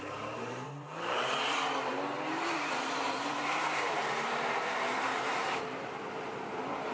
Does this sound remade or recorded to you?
remade